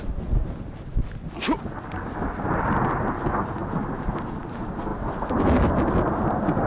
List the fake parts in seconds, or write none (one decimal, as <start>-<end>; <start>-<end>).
none